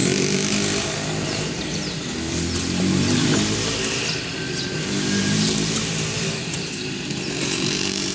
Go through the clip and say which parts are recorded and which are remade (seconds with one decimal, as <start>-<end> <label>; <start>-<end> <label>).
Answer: 0.0-2.8 recorded; 2.8-3.3 remade; 3.3-5.2 recorded; 5.2-8.1 remade